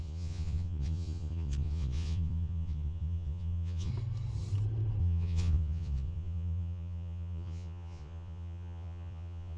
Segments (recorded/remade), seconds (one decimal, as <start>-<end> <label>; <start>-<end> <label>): 0.0-3.9 remade; 3.9-5.0 recorded; 5.0-9.6 remade